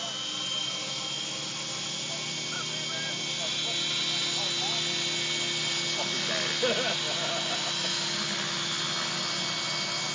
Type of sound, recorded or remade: recorded